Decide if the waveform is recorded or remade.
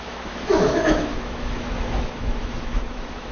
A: remade